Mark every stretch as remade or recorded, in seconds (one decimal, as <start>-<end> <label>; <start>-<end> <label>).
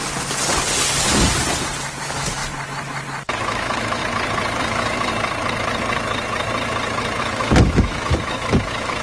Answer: 0.0-2.0 recorded; 2.0-2.4 remade; 2.4-3.3 recorded; 3.3-4.0 remade; 4.0-4.6 recorded; 4.6-5.1 remade; 5.1-7.2 recorded; 7.2-9.0 remade